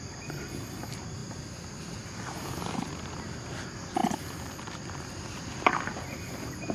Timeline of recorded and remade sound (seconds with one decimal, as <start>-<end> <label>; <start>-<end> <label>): 0.0-6.7 recorded